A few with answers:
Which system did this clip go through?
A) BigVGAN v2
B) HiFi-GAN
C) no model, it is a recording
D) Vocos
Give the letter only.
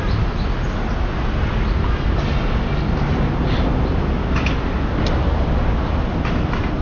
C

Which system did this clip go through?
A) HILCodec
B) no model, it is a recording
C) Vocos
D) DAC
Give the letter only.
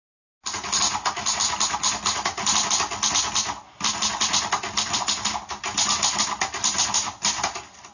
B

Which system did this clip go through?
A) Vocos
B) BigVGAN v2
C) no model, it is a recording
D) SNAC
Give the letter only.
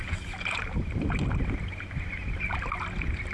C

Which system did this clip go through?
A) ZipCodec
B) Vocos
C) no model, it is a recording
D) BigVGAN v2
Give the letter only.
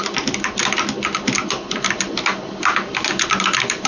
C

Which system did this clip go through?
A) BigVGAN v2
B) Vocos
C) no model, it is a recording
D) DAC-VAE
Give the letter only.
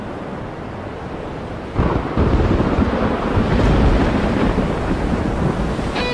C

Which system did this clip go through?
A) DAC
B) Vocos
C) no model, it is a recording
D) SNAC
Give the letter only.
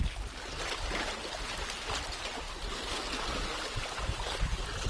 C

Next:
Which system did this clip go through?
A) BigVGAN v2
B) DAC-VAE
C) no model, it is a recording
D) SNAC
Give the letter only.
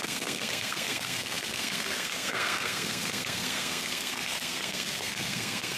D